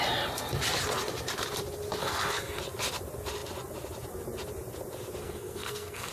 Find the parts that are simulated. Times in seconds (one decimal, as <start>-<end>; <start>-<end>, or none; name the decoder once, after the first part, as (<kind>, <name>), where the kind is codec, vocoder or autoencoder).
2.0-2.6 (codec, SNAC); 5.2-6.1